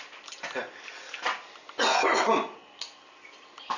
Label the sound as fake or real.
real